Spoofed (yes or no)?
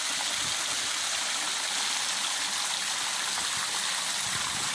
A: no